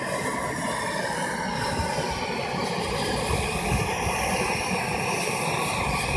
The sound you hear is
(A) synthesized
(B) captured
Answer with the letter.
B